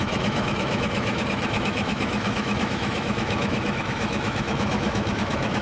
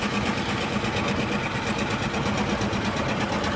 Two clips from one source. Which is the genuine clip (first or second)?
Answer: second